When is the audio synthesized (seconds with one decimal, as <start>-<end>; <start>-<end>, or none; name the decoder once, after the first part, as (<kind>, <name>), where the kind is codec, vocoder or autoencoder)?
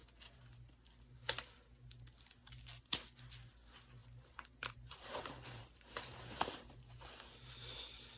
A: 4.0-6.8 (vocoder, BigVGAN v2)